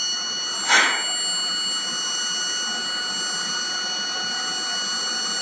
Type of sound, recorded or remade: recorded